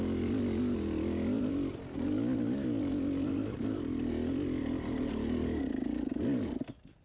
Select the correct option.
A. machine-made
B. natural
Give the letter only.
B